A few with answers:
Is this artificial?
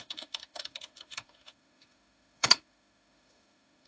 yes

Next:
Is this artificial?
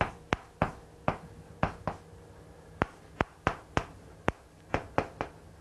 no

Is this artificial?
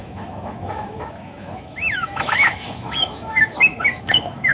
yes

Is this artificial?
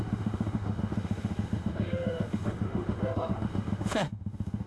yes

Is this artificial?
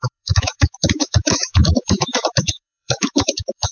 yes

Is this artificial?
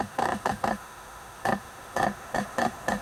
yes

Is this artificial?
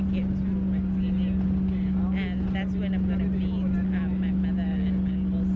no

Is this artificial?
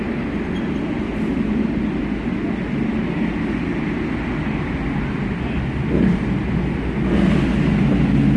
no